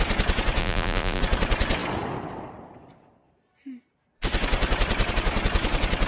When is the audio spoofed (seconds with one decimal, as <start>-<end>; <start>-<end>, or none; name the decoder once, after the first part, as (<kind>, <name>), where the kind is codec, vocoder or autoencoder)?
0.6-1.2 (vocoder, BigVGAN v2)